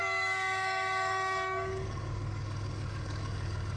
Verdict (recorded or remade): remade